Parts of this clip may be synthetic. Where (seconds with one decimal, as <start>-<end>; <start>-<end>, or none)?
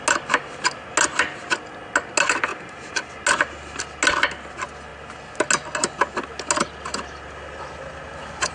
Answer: 2.5-3.1